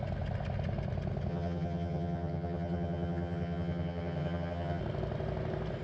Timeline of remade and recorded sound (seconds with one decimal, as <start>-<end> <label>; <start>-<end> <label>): 0.0-1.3 recorded; 1.3-4.8 remade; 4.8-5.8 recorded